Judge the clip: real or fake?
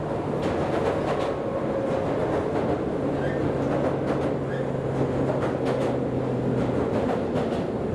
real